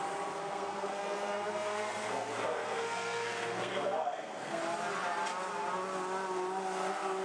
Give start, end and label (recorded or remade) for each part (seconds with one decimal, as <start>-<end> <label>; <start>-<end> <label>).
0.0-0.4 recorded; 0.4-4.6 remade; 4.6-7.2 recorded